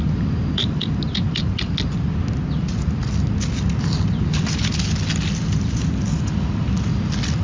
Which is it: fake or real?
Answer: real